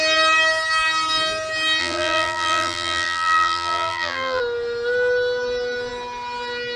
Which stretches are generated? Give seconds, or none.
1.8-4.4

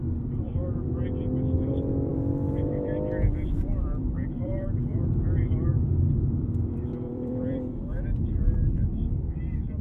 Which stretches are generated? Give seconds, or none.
0.0-0.6; 1.7-9.8

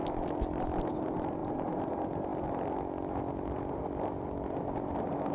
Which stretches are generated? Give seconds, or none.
1.4-1.9

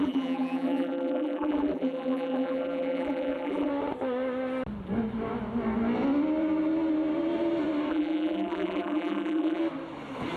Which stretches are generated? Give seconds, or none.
0.0-3.7; 7.9-9.6

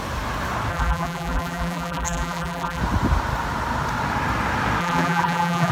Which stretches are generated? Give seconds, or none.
0.7-2.8; 4.8-5.7

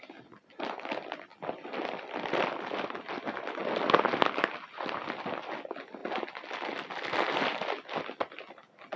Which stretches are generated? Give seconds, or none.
none

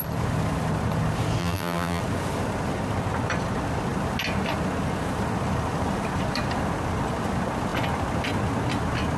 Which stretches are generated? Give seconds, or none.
1.4-2.0